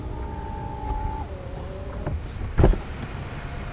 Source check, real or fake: real